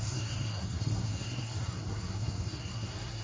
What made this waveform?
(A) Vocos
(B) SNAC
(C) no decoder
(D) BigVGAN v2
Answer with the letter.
B